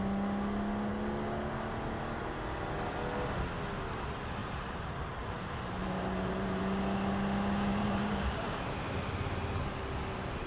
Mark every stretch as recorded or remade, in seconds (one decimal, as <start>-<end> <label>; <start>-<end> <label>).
0.0-4.4 recorded; 4.4-6.6 remade; 6.6-7.7 recorded; 7.7-8.9 remade; 8.9-10.5 recorded